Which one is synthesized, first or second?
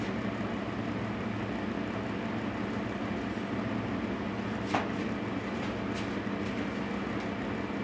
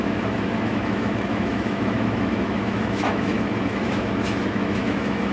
second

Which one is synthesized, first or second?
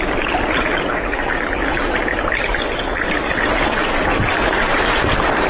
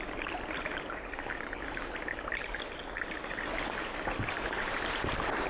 first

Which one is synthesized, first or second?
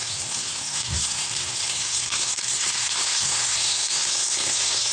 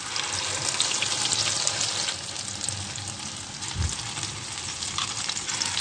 first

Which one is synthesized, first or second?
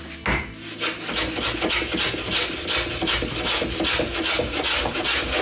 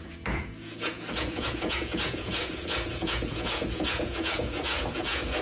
second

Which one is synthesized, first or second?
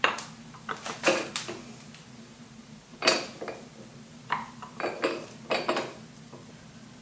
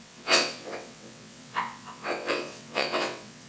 second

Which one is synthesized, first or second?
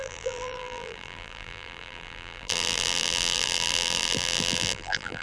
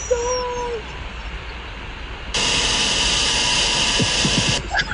first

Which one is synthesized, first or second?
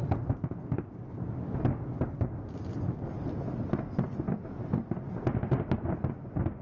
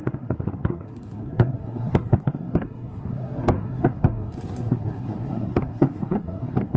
second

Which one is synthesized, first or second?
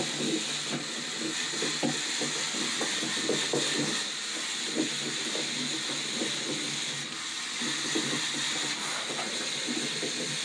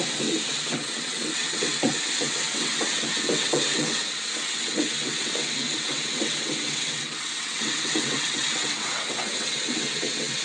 second